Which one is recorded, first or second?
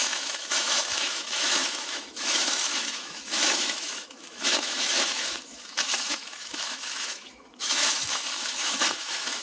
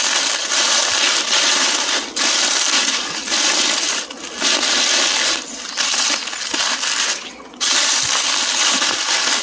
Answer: second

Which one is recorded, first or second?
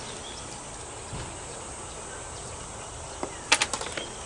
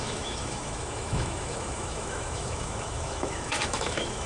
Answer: first